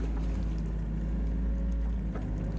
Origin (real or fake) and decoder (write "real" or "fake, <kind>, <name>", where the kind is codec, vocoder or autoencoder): real